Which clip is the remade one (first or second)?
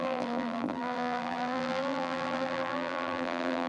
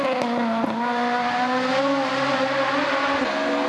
first